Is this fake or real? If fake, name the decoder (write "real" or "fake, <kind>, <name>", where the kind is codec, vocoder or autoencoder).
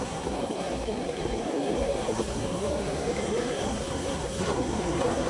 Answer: fake, codec, SNAC